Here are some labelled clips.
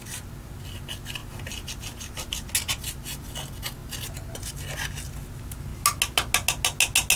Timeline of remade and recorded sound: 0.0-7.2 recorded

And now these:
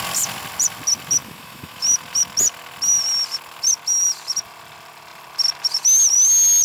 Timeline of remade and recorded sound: 0.0-1.2 recorded; 1.2-1.8 remade; 1.8-6.6 recorded

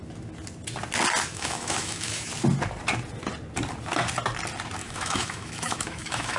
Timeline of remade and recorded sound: 0.0-1.3 recorded; 1.3-2.3 remade; 2.3-4.8 recorded; 4.8-6.4 remade

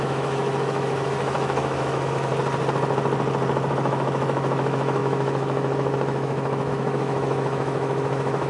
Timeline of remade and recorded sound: 0.0-2.3 remade; 2.3-3.7 recorded; 3.7-8.5 remade

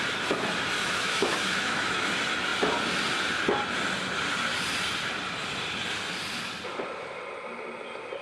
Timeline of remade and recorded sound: 0.0-0.8 recorded; 0.8-2.1 remade; 2.1-8.2 recorded

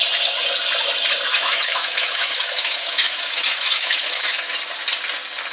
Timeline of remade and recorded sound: 0.0-1.3 recorded; 1.3-4.5 remade; 4.5-5.5 recorded

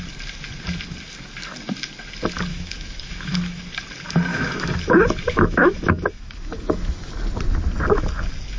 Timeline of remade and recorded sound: 0.0-2.5 recorded; 2.5-3.6 remade; 3.6-4.3 recorded; 4.3-7.1 remade; 7.1-8.6 recorded